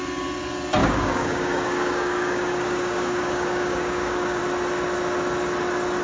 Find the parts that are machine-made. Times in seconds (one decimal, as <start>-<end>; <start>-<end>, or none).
0.8-4.4